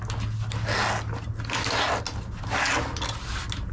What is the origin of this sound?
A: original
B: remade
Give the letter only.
A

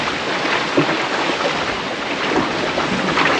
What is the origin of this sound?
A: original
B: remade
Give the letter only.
A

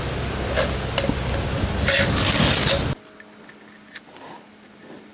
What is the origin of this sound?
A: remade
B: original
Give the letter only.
B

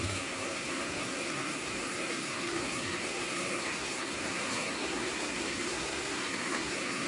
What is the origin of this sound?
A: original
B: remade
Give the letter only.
B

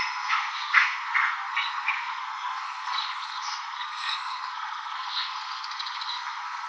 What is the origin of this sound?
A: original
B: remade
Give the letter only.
B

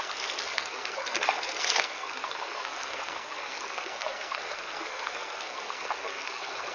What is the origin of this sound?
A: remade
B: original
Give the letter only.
A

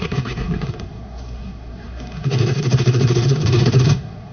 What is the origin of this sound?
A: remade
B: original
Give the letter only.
A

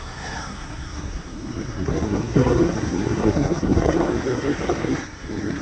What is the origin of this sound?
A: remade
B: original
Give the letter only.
A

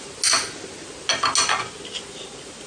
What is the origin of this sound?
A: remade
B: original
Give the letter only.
B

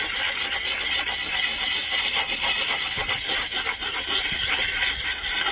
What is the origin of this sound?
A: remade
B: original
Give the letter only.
B